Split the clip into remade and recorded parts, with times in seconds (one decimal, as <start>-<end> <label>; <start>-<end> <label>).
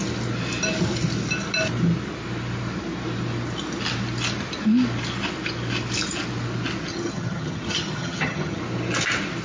0.0-6.9 recorded; 6.9-8.6 remade; 8.6-9.4 recorded